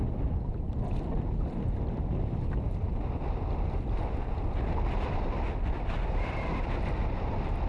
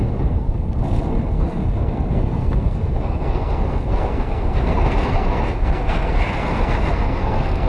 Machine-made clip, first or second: second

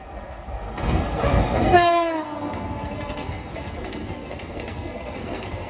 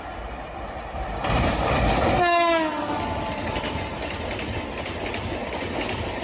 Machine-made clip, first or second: first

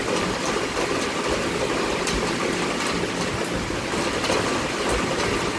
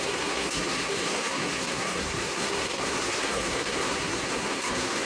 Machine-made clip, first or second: second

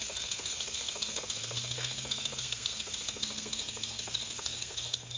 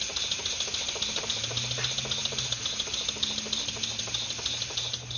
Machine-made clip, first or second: first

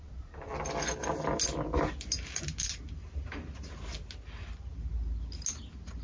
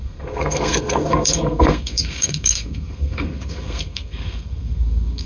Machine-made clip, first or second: second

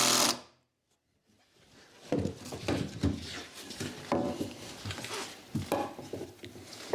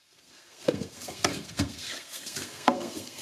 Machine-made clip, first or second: second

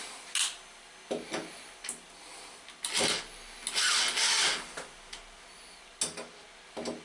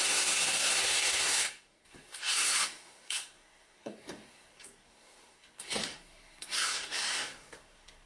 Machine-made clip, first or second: second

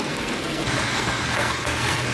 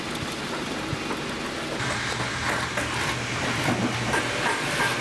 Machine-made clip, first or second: first